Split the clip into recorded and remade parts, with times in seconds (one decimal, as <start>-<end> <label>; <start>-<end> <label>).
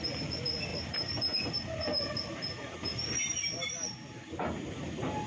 0.0-0.7 recorded; 0.7-3.9 remade; 3.9-5.3 recorded